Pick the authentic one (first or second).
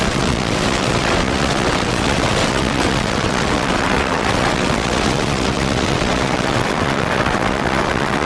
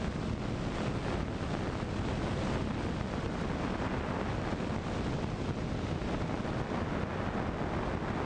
second